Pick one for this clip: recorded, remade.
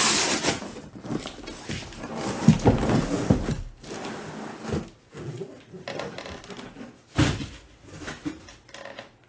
recorded